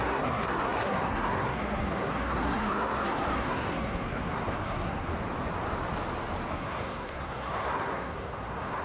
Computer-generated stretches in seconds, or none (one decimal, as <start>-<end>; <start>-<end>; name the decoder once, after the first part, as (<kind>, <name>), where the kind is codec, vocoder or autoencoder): 0.0-5.1 (codec, SNAC); 6.5-8.8